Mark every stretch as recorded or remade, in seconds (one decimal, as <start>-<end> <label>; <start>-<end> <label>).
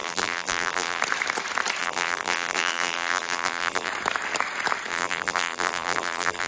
0.0-1.0 remade; 1.0-1.8 recorded; 1.8-3.9 remade; 3.9-4.9 recorded; 4.9-6.5 remade